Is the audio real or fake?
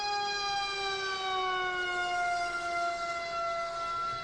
real